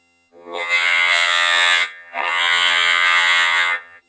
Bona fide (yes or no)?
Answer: no